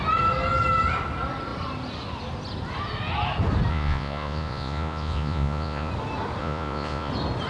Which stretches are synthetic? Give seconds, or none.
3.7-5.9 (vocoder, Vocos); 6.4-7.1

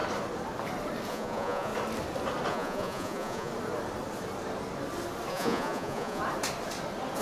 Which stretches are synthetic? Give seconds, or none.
1.1-1.7 (vocoder, Vocos); 2.5-3.5; 5.3-6.2

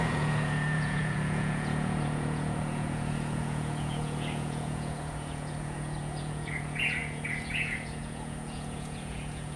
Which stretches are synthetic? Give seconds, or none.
0.0-9.6 (vocoder, Vocos)

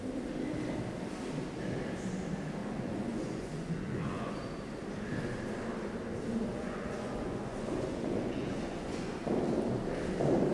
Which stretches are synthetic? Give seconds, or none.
2.6-4.4 (vocoder, Vocos); 6.5-9.1